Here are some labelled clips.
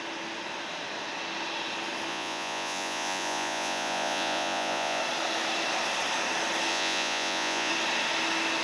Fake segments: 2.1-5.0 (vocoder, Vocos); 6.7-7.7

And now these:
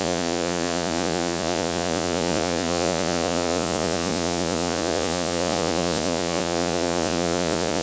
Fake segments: 0.0-7.8 (vocoder, Vocos)

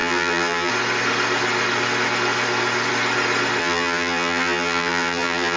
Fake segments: 0.0-0.7 (vocoder, BigVGAN v2); 3.6-5.6